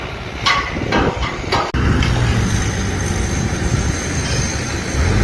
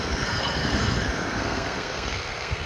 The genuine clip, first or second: first